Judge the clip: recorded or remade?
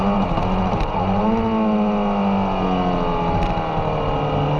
recorded